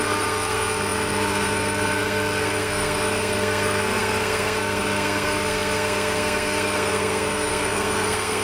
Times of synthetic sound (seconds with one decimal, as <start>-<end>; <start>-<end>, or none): 0.0-8.4